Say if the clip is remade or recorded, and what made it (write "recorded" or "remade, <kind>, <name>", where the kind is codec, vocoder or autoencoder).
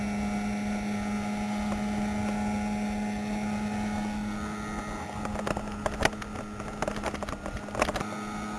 recorded